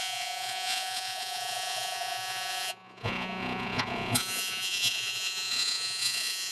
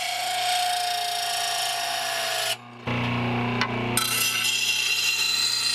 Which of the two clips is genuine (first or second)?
second